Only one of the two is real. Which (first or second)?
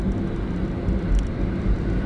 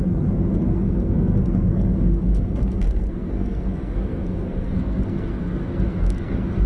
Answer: first